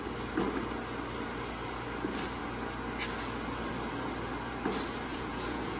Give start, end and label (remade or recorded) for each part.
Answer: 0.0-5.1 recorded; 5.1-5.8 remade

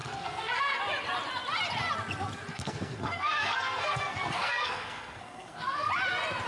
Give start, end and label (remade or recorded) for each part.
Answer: 0.0-0.8 remade; 0.8-2.5 recorded; 2.5-5.9 remade; 5.9-6.5 recorded

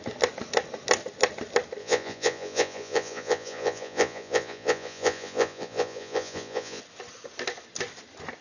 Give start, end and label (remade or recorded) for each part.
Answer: 0.0-1.8 recorded; 1.8-6.8 remade; 6.8-8.4 recorded